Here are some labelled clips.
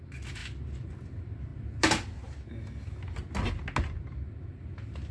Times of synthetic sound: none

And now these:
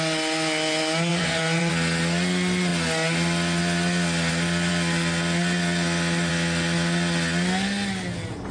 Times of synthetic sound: 1.1-1.7 (vocoder, Vocos)

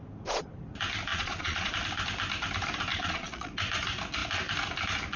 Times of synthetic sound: 1.1-1.7 (vocoder, Vocos); 2.9-3.5

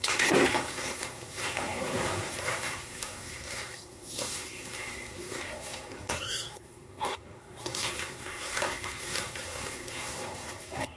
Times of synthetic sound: 0.0-11.0 (codec, SNAC)

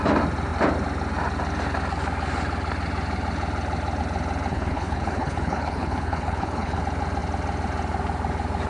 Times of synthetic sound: 4.5-6.8 (codec, HILCodec)